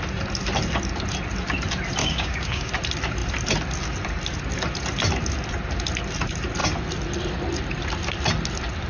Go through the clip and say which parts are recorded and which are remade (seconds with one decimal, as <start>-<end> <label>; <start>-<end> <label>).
0.0-2.0 recorded; 2.0-2.7 remade; 2.7-8.9 recorded